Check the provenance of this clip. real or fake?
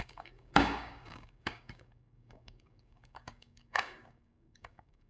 fake